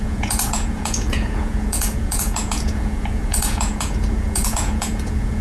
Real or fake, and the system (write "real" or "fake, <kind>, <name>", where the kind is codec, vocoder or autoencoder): fake, vocoder, Vocos